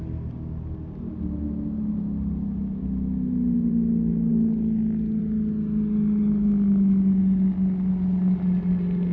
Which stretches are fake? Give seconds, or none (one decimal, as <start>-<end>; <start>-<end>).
none